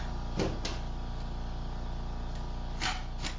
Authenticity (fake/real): fake